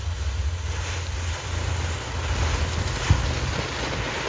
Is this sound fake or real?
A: real